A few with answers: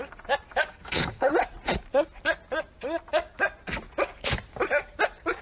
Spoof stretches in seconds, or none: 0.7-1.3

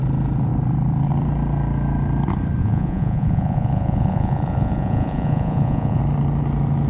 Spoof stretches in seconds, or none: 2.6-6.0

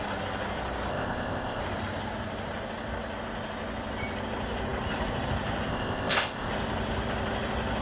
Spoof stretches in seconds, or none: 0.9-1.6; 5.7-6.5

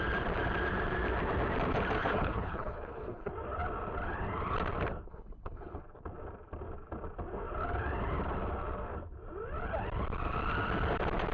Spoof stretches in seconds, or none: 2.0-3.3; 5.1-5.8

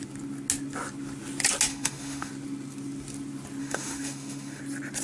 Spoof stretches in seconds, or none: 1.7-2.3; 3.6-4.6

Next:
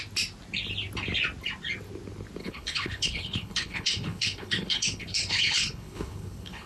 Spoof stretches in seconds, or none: 2.4-6.7